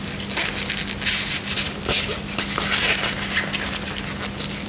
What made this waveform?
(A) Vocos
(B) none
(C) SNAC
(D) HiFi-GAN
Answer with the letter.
B